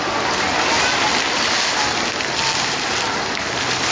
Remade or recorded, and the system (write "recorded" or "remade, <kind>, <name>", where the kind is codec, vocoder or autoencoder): recorded